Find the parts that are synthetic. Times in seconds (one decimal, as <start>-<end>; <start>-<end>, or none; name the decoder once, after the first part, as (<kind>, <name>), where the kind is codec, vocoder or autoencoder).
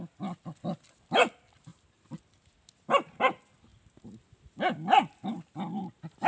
none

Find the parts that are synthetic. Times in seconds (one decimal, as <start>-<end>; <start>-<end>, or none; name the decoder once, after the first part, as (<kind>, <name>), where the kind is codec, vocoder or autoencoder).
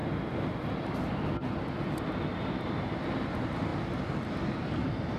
none